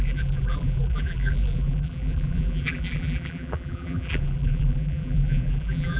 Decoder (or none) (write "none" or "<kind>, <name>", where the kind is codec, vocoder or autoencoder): vocoder, BigVGAN v2